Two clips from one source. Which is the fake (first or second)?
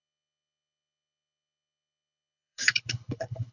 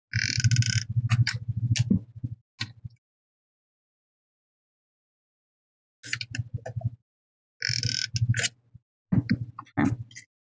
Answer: first